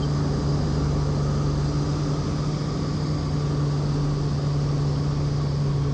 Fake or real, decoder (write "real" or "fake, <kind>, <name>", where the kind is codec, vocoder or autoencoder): real